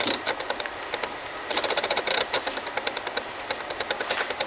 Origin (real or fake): real